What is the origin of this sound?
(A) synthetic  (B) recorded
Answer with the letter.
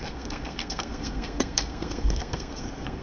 A